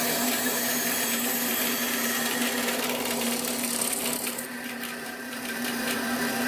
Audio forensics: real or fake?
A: fake